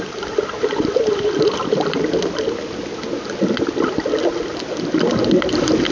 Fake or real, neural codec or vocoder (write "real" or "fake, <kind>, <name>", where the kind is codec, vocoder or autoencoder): real